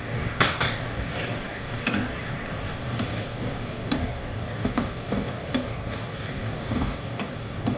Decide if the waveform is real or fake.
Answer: fake